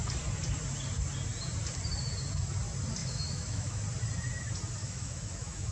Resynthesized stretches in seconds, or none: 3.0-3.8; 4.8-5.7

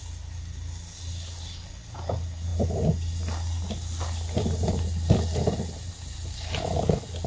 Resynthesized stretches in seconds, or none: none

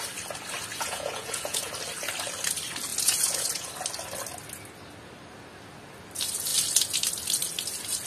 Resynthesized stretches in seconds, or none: 0.7-1.7; 2.9-3.7

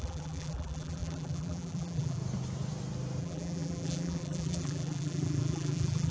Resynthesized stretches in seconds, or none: 0.0-2.2; 3.2-6.1